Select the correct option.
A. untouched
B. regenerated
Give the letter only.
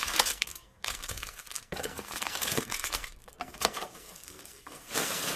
B